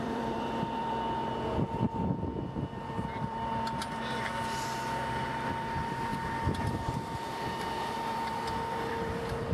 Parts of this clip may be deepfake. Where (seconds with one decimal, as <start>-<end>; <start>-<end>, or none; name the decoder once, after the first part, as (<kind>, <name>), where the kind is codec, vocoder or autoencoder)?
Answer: 0.0-6.1 (vocoder, BigVGAN v2); 6.6-9.5